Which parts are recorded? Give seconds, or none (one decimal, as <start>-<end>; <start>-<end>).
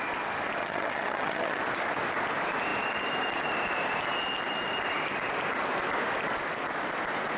0.0-0.6; 1.6-7.4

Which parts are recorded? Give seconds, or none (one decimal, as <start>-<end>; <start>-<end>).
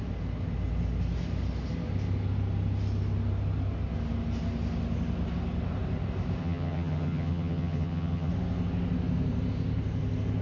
0.0-6.4; 8.3-10.4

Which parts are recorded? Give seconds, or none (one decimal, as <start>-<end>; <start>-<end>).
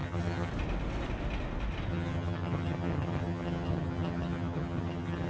0.5-1.9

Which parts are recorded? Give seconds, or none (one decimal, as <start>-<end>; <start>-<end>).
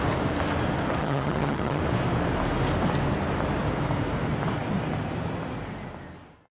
0.0-1.0; 1.8-6.5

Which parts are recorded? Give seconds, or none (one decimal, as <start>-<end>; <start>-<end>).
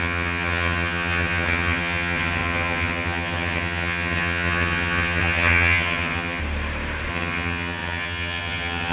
6.4-7.1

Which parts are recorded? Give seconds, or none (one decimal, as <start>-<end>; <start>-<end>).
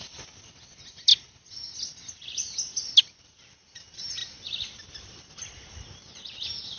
0.0-6.8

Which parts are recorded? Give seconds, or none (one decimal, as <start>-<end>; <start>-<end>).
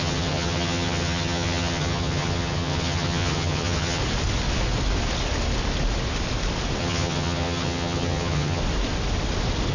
4.0-6.8; 8.6-9.7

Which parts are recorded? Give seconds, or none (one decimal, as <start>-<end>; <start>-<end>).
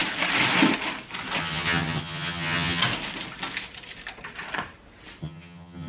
0.0-1.4; 2.8-5.2